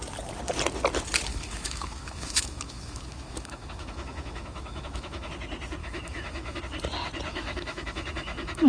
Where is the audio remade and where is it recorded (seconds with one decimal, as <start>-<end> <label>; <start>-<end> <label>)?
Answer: 0.0-1.3 recorded; 1.3-5.3 remade; 5.3-5.8 recorded; 5.8-6.6 remade; 6.6-7.3 recorded; 7.3-8.7 remade